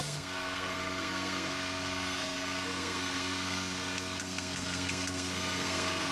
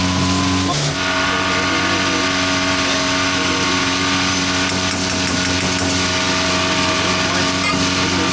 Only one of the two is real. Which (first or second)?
second